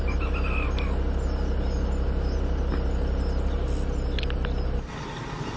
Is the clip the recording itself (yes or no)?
yes